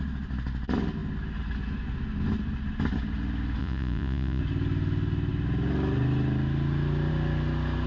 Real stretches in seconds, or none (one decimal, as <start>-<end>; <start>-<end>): 0.0-3.6; 4.4-7.9